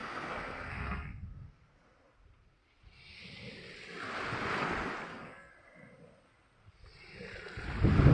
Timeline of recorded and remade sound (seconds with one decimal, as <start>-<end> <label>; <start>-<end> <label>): 0.0-1.6 remade; 1.6-5.0 recorded; 5.0-5.5 remade; 5.5-8.1 recorded